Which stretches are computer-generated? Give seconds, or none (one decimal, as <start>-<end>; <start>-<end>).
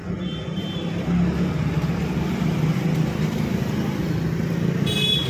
none